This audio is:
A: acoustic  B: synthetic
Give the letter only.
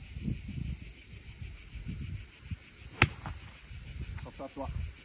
A